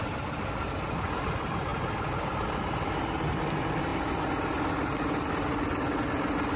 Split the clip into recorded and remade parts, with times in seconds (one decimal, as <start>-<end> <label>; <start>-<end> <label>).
0.0-6.6 recorded